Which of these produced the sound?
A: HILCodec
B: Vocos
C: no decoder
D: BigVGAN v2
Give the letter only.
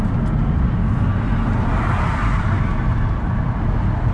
C